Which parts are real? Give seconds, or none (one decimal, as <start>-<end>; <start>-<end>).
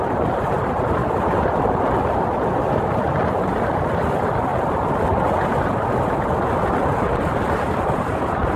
0.0-8.6